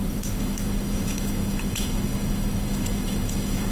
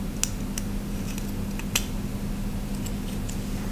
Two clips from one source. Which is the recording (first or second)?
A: second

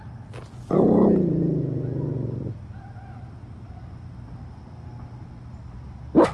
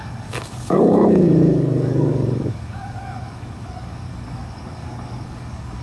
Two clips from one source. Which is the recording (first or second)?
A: first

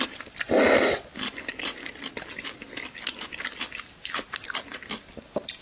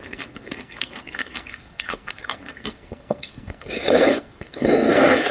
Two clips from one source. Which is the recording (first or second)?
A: first